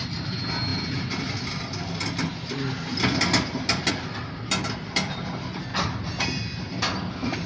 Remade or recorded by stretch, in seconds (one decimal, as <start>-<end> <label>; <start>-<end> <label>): 0.0-7.5 recorded